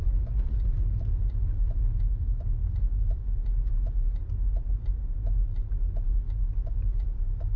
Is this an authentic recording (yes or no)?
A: yes